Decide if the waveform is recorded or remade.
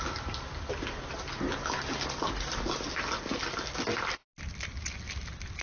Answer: recorded